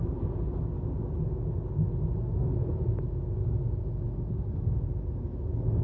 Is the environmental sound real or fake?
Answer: real